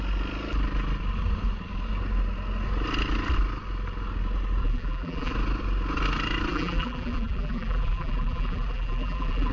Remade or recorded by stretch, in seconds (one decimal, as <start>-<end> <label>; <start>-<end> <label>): 0.0-4.6 recorded; 4.6-5.3 remade; 5.3-6.5 recorded; 6.5-9.5 remade